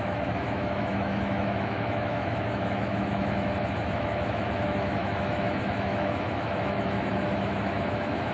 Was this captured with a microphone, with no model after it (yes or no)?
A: no